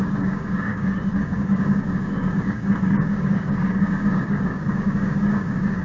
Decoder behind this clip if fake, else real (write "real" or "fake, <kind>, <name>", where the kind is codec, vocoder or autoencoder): fake, codec, DAC